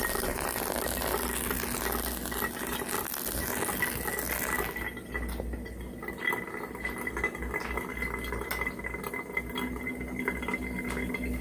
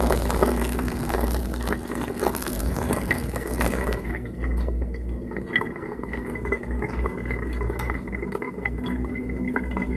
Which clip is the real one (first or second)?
first